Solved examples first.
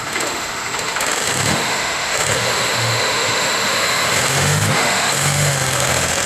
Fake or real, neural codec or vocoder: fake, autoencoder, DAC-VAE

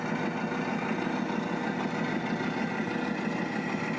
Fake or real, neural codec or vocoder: real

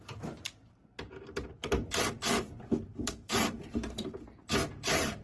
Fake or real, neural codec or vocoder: fake, vocoder, BigVGAN v2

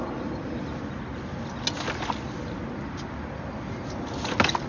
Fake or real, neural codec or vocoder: real